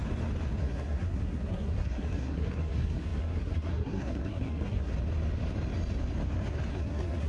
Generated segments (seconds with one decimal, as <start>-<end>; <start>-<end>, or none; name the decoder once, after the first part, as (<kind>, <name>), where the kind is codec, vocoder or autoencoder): 0.6-4.9 (codec, SNAC); 6.7-7.3